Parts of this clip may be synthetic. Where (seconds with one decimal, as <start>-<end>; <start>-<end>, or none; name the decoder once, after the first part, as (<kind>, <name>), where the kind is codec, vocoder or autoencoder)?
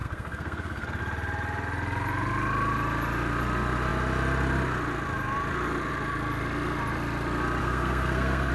0.0-1.0 (codec, SNAC); 7.6-8.5